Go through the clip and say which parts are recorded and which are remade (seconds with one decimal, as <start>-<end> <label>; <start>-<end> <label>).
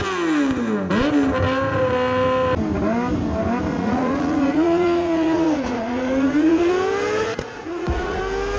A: 0.0-3.7 recorded; 3.7-6.7 remade; 6.7-7.2 recorded; 7.2-8.2 remade; 8.2-8.6 recorded